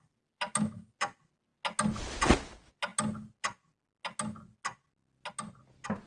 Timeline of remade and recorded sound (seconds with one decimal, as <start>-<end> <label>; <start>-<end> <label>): 0.0-6.1 recorded